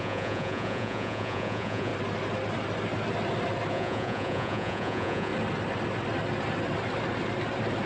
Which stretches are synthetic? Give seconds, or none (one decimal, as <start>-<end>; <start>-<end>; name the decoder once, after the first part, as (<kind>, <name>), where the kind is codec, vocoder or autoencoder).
0.0-1.9 (vocoder, Vocos); 3.7-5.3